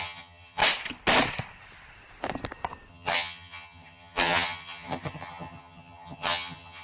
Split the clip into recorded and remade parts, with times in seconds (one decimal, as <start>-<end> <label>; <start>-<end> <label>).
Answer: 0.0-0.6 remade; 0.6-2.9 recorded; 2.9-6.8 remade